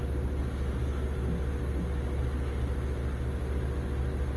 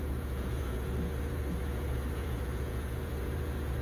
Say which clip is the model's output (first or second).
second